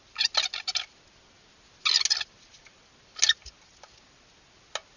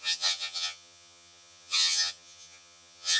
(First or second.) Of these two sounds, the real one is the first